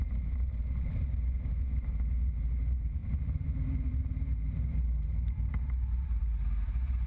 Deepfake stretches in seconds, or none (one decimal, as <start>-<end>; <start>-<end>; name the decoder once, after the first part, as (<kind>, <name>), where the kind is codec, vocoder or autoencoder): 0.0-7.1 (vocoder, BigVGAN v2)